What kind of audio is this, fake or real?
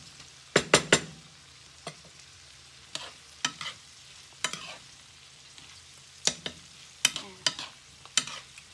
real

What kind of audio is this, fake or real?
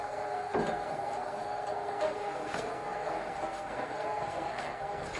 fake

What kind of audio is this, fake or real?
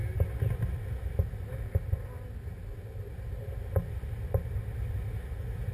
real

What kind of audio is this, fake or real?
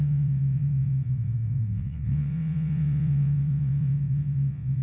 fake